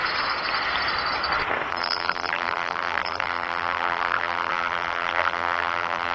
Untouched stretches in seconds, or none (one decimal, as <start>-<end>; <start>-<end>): 0.0-1.7